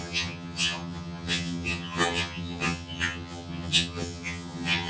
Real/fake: fake